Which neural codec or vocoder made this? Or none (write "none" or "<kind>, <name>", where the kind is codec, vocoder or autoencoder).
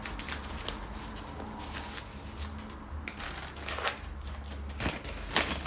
none